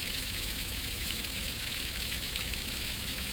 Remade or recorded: remade